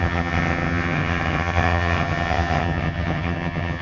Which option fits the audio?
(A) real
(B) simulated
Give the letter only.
B